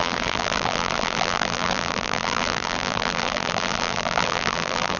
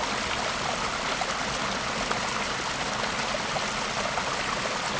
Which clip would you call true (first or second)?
second